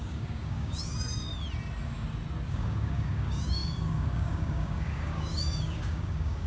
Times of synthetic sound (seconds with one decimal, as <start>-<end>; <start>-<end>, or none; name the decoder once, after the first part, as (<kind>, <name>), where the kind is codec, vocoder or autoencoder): 0.0-1.3 (codec, DAC); 2.5-6.5